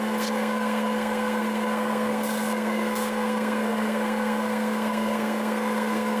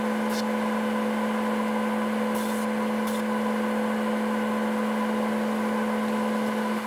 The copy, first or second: first